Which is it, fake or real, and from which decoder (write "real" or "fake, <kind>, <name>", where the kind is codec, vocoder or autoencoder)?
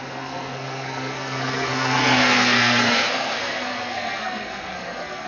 fake, codec, SNAC